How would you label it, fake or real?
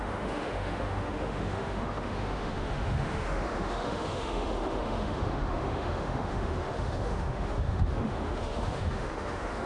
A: fake